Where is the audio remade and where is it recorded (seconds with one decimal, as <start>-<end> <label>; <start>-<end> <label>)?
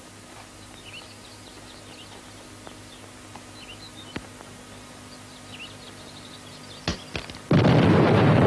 0.0-8.5 recorded